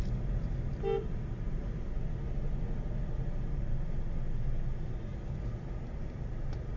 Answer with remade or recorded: recorded